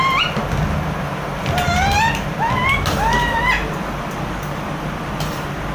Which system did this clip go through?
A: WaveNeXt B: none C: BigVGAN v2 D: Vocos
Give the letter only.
B